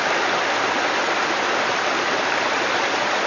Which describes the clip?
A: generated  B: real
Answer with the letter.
B